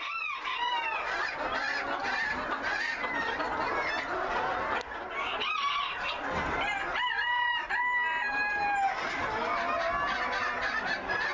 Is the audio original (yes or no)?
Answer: yes